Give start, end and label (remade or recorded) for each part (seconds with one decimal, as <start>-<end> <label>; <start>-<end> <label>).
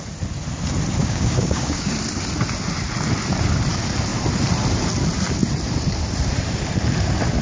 0.0-1.0 recorded; 1.0-1.9 remade; 1.9-7.4 recorded